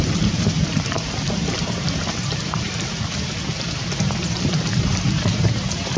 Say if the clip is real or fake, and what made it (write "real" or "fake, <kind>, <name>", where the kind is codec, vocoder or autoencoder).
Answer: fake, vocoder, BigVGAN v2